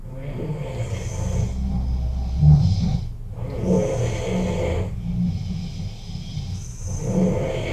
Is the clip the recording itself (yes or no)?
yes